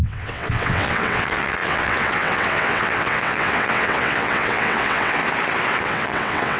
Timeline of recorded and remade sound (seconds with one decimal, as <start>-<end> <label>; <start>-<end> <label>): 0.0-5.2 remade; 5.2-5.8 recorded; 5.8-6.6 remade